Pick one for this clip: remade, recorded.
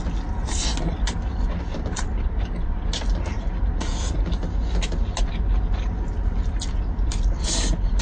recorded